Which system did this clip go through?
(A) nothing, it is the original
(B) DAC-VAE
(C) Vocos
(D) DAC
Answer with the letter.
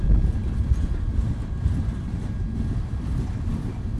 A